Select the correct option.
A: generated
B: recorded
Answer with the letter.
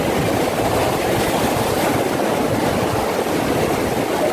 B